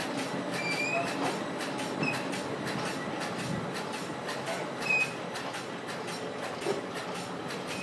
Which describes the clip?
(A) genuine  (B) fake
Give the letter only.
B